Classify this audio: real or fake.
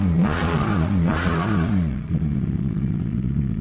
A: fake